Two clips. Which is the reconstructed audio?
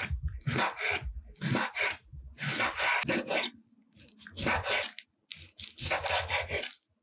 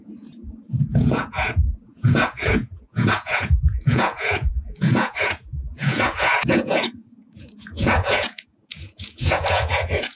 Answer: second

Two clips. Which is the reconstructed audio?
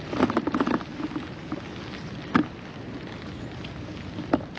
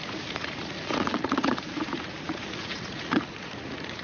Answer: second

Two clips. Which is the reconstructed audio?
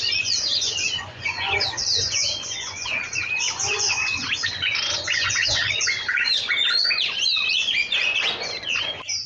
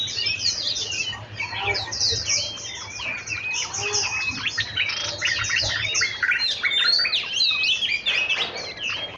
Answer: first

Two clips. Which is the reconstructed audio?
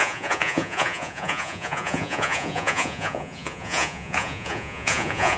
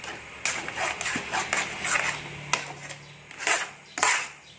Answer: first